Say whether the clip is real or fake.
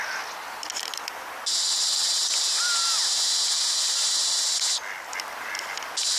real